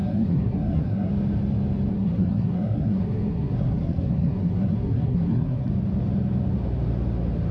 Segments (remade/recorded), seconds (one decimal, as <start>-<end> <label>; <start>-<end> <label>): 0.0-1.1 remade; 1.1-1.9 recorded; 1.9-5.7 remade; 5.7-7.5 recorded